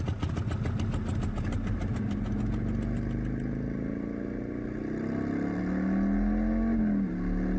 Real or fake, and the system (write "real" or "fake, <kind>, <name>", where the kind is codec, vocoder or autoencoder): real